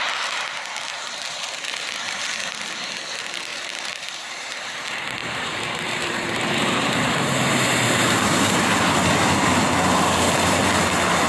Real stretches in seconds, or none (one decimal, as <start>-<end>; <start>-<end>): 0.0-0.9; 2.2-3.5; 4.8-5.2; 8.8-11.3

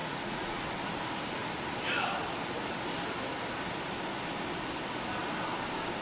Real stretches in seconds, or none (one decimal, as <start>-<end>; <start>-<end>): 0.6-6.0

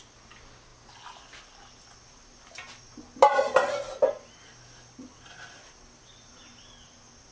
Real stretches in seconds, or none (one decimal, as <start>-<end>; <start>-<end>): 0.0-7.3

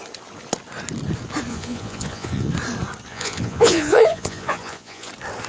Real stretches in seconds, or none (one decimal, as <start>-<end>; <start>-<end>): 0.0-1.5; 2.5-3.1; 5.1-5.5

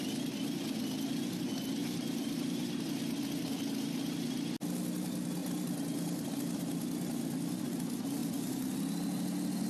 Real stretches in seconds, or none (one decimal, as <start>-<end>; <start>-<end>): 0.0-1.8; 2.9-9.7